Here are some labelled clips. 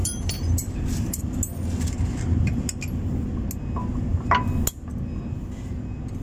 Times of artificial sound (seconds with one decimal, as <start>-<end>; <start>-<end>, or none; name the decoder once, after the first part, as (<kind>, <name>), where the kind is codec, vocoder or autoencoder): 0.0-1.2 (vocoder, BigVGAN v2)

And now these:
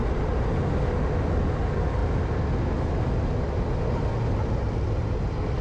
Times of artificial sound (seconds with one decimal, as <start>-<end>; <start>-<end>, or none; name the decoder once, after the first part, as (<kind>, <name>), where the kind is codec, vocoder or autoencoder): none

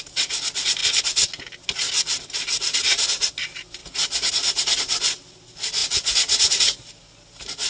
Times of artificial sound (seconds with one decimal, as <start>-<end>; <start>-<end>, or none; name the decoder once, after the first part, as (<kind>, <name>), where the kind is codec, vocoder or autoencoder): 0.0-0.8 (vocoder, BigVGAN v2); 1.9-3.8; 4.3-5.8; 6.5-7.7

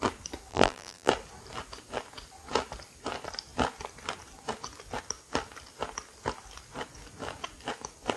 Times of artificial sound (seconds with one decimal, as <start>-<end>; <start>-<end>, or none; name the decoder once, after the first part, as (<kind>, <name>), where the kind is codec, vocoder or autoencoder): 0.5-1.1 (vocoder, BigVGAN v2)